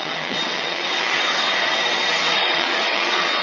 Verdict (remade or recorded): remade